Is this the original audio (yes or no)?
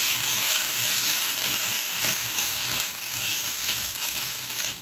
no